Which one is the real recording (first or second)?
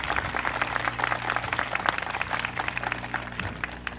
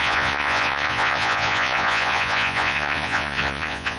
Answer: first